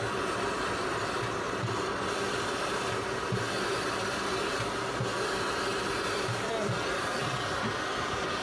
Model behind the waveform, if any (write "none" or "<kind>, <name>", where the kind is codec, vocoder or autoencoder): none